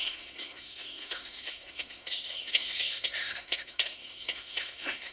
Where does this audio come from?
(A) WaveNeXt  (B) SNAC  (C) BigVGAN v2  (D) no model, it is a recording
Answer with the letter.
B